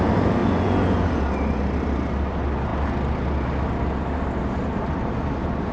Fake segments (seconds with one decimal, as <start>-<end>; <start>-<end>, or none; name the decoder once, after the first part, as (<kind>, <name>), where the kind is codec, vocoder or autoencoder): 0.4-1.1 (vocoder, Vocos)